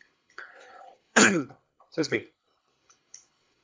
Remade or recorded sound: remade